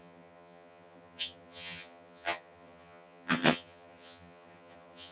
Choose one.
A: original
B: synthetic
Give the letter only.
B